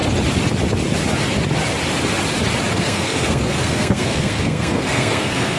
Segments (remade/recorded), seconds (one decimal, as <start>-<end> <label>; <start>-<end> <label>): 0.0-2.7 recorded; 2.7-5.6 remade